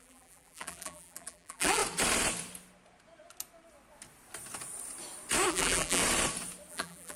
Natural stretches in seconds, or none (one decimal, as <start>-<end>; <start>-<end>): 1.8-5.5; 6.0-6.7